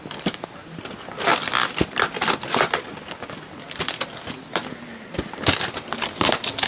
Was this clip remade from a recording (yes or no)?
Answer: no